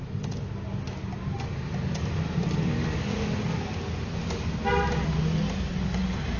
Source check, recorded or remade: recorded